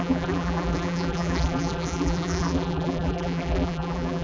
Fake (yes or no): yes